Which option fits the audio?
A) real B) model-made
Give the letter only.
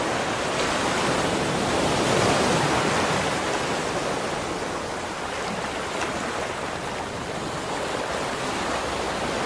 A